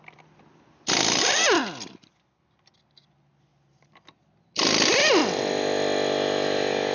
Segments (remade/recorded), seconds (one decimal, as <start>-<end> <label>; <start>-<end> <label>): 0.0-6.9 recorded